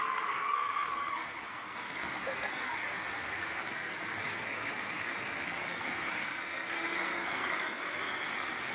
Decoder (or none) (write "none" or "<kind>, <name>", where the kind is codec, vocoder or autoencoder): codec, SNAC